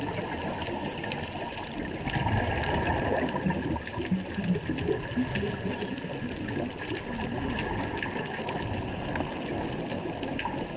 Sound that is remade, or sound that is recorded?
recorded